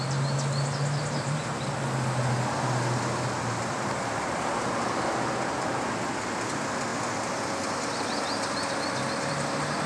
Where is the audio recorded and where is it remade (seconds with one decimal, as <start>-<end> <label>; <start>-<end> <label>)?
0.0-9.9 recorded